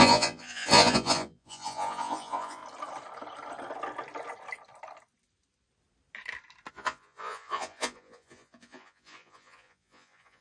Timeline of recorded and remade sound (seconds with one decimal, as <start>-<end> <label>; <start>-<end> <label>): 0.0-2.6 remade; 2.6-6.7 recorded; 6.7-10.4 remade